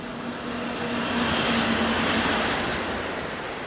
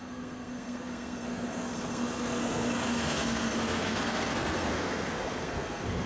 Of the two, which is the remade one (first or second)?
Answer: second